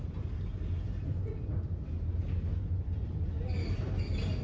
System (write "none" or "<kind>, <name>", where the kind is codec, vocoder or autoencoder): none